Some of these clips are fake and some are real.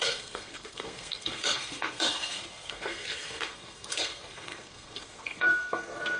fake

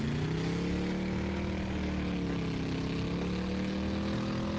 real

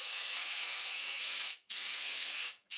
fake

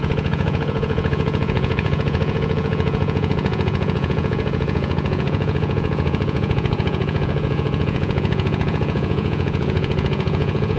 fake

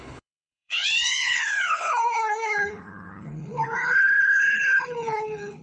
fake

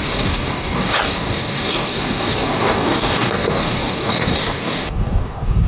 fake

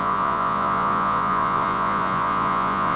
fake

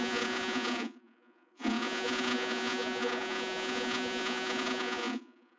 fake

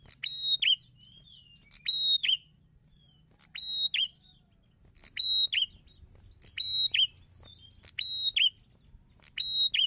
real